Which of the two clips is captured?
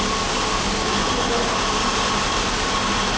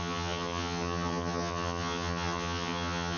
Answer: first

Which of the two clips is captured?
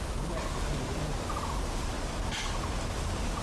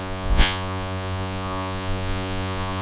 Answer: first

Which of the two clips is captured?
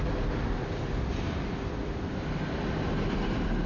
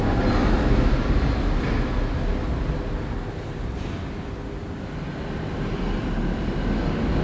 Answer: second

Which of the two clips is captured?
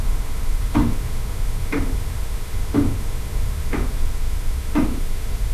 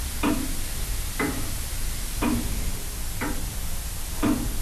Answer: second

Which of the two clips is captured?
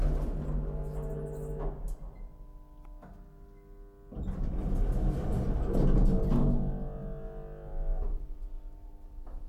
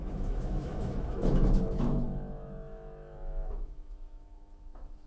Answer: first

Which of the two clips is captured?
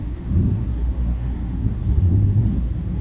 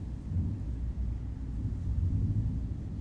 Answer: second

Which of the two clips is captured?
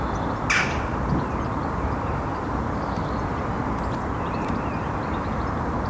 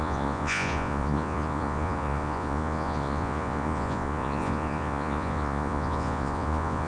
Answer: first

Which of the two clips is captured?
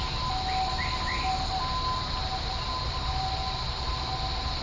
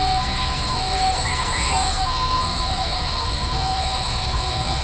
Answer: first